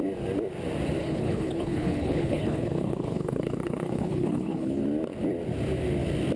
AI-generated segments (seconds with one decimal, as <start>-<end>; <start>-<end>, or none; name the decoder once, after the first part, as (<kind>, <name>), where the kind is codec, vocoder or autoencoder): 1.0-4.8 (codec, HILCodec)